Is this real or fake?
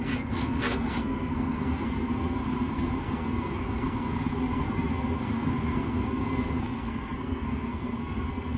fake